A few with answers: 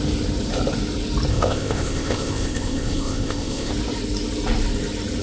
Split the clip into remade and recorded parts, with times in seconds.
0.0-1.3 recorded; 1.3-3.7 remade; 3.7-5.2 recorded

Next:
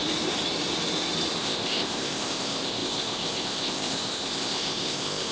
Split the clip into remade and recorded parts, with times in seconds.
0.0-1.4 recorded; 1.4-5.3 remade

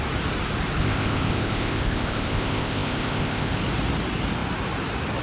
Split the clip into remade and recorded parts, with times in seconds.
0.0-0.8 recorded; 0.8-3.6 remade; 3.6-5.2 recorded

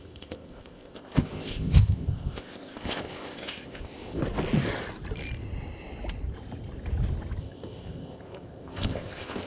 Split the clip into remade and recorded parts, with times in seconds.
0.0-4.2 remade; 4.2-7.4 recorded; 7.4-9.5 remade

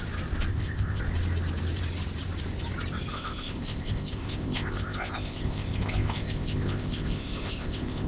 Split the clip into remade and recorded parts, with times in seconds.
0.0-0.5 recorded; 0.5-1.0 remade; 1.0-3.1 recorded; 3.1-8.1 remade

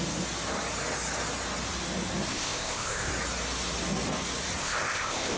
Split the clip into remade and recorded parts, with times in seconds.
0.0-2.3 recorded; 2.3-3.1 remade; 3.1-4.6 recorded; 4.6-5.4 remade

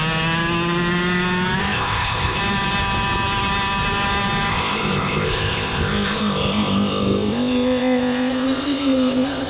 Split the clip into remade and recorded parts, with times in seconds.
0.0-1.6 recorded; 1.6-2.4 remade; 2.4-4.5 recorded; 4.5-9.5 remade

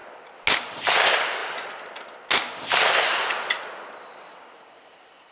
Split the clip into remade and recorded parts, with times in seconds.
0.0-5.3 recorded